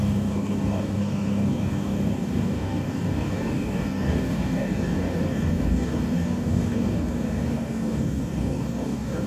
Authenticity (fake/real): fake